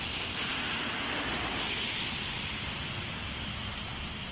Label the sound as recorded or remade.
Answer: recorded